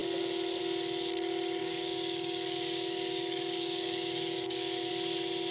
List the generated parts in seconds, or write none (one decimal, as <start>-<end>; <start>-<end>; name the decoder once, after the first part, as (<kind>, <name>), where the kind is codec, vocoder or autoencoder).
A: 1.6-4.9 (codec, DAC)